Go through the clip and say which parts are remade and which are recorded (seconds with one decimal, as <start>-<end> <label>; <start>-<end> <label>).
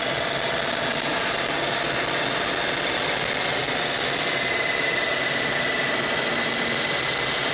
0.0-7.5 recorded